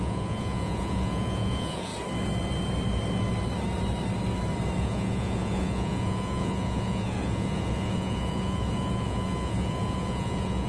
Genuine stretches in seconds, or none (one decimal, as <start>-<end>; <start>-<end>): 1.9-4.8